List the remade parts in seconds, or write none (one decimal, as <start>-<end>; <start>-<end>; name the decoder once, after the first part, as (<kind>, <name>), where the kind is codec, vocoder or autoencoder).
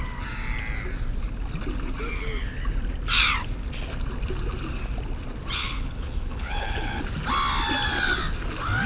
5.6-7.0 (codec, HILCodec)